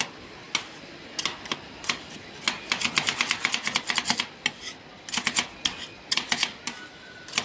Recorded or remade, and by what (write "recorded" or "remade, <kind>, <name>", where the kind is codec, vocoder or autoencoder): recorded